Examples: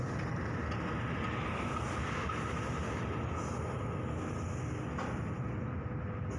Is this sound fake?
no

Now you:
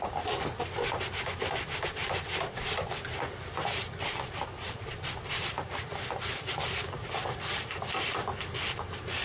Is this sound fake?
no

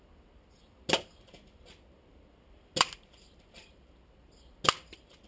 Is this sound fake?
no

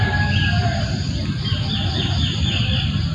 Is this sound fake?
yes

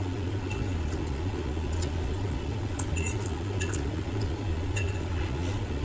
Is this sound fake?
yes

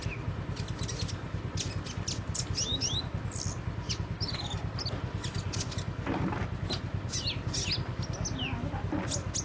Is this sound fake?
no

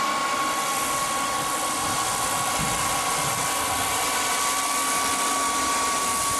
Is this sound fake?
no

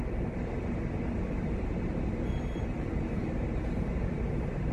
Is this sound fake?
no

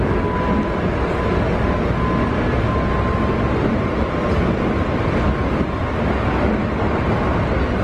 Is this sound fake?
no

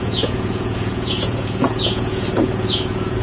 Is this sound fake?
yes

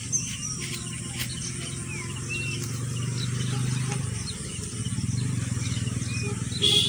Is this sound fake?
no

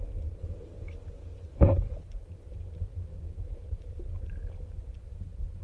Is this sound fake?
no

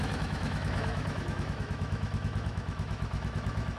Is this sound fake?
yes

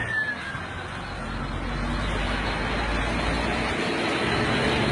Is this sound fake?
no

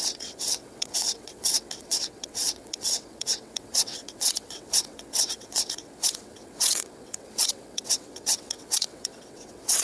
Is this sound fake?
yes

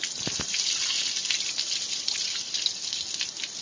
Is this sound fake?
no